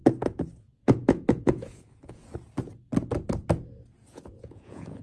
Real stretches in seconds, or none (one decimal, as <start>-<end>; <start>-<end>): 0.0-0.6; 2.2-4.1